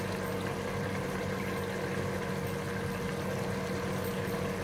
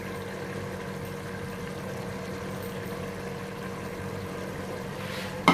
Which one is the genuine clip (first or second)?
first